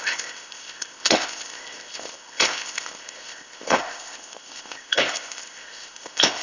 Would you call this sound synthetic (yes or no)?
yes